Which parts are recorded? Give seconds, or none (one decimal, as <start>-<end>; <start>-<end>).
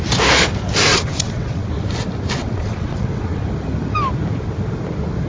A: 0.0-0.9; 1.7-2.4; 3.4-5.3